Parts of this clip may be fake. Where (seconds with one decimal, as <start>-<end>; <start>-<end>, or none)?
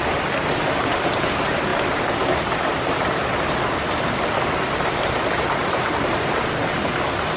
none